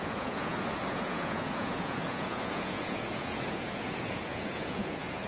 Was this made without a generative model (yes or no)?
no